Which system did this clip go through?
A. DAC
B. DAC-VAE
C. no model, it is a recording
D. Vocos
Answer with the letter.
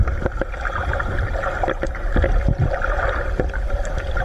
C